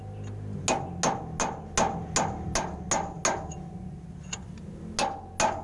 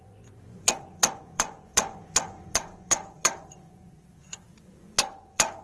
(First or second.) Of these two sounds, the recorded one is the first